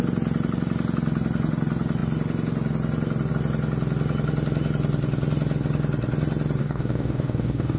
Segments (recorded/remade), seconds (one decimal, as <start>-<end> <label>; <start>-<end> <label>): 0.0-6.6 recorded; 6.6-7.8 remade